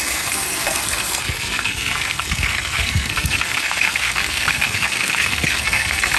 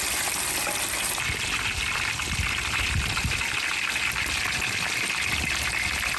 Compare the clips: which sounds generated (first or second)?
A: first